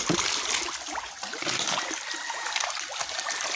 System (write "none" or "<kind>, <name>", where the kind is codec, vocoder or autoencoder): none